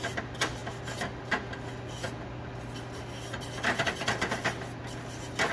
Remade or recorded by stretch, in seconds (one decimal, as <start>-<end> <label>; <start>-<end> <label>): 0.0-5.5 recorded

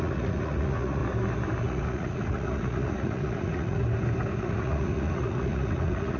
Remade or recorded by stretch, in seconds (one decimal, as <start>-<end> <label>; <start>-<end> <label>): 0.0-1.0 remade; 1.0-1.6 recorded; 1.6-3.8 remade; 3.8-4.4 recorded; 4.4-6.2 remade